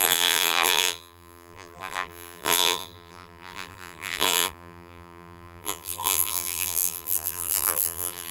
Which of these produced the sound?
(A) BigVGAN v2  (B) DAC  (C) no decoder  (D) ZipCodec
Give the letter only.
A